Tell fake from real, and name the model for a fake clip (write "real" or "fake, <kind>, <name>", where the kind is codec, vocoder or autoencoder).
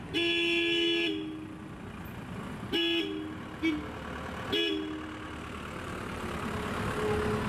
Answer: real